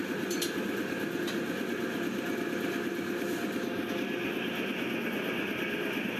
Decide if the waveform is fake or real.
real